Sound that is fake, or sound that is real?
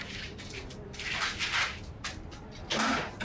real